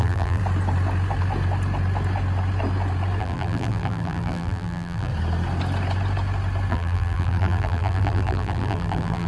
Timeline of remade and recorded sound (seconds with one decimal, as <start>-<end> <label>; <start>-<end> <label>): 0.0-0.4 remade; 0.4-3.2 recorded; 3.2-5.1 remade; 5.1-6.7 recorded; 6.7-9.3 remade